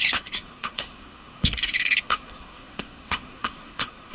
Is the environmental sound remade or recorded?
remade